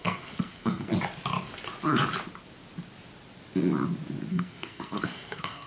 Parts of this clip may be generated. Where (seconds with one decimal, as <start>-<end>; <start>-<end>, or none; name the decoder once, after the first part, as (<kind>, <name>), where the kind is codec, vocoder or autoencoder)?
0.0-0.9 (codec, SNAC); 4.3-5.7